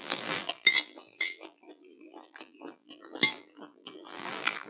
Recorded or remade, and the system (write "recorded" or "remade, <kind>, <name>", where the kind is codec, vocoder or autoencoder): remade, vocoder, BigVGAN v2